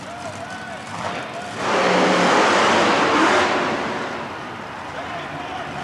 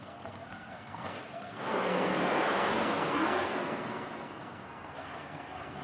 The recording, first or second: first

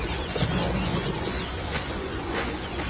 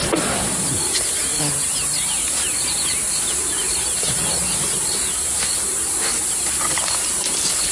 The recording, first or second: second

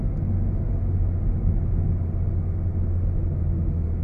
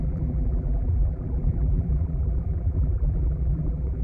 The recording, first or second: first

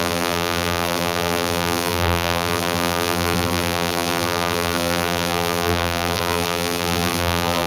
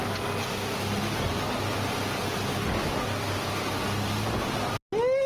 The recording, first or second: second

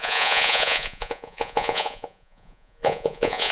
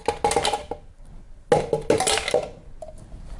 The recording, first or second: second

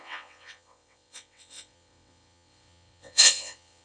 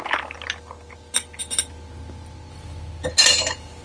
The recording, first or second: second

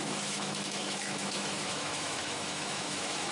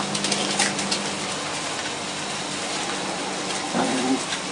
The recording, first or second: second